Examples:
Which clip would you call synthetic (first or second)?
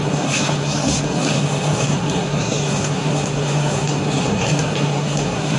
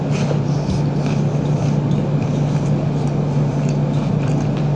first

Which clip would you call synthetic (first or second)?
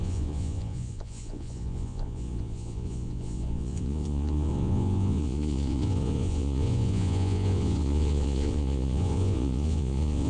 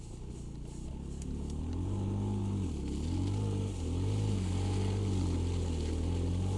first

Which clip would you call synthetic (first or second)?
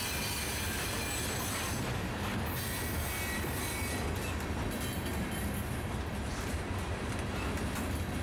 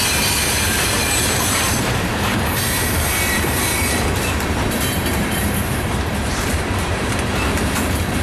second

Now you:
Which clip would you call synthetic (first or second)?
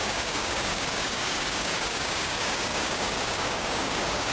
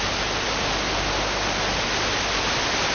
first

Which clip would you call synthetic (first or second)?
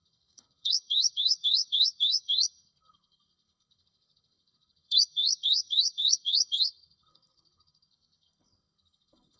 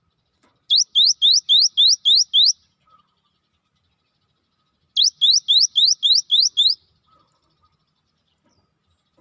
first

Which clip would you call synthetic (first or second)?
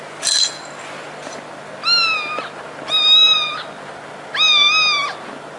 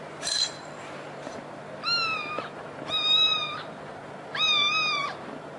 second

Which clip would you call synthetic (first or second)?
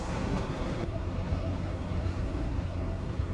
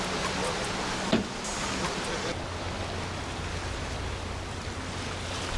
first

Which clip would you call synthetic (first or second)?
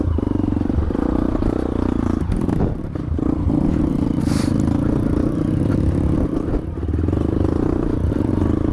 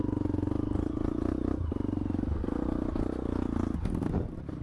first